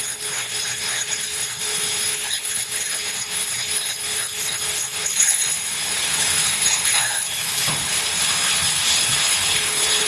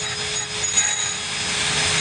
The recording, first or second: second